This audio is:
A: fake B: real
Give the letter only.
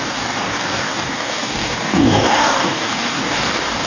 A